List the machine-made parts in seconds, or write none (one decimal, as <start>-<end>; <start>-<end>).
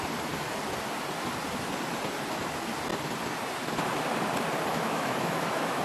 4.7-5.8